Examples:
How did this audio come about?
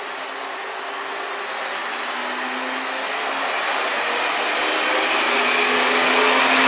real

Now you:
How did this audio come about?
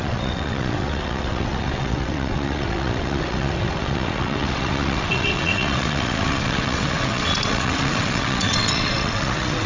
fake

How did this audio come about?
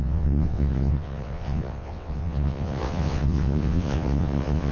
fake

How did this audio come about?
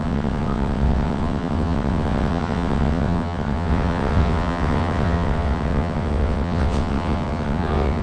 fake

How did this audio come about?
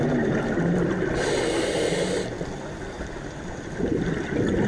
real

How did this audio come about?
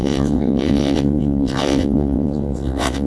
fake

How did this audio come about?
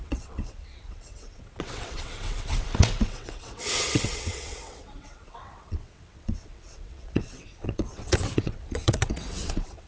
fake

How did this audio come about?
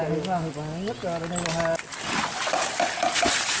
real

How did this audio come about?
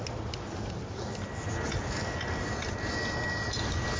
real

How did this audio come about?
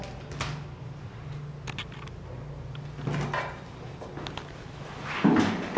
real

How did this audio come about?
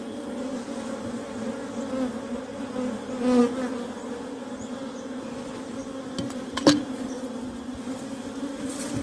real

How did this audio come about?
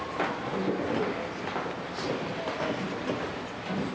real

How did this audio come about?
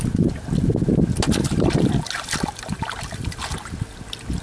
real